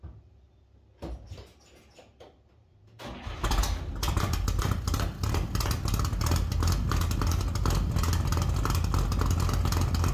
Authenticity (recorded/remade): recorded